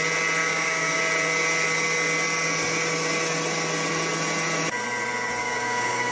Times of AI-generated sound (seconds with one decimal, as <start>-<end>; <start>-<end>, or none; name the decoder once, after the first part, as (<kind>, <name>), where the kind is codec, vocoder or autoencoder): 0.4-1.0 (codec, DAC); 5.4-6.1